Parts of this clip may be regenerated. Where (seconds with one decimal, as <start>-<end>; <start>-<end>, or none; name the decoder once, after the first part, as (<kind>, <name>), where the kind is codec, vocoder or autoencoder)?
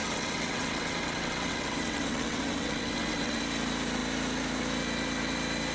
0.0-3.4 (vocoder, WaveNeXt)